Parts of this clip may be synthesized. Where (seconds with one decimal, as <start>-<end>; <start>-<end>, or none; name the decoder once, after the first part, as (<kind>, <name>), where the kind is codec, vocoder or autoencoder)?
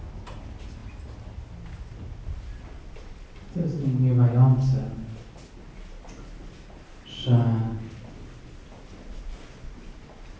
none